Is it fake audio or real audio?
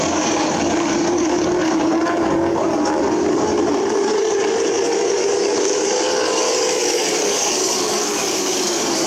fake